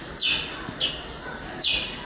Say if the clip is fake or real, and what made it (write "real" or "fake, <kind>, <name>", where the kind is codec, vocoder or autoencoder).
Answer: real